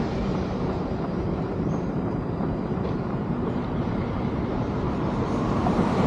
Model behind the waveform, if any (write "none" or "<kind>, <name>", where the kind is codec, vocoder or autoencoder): vocoder, BigVGAN v2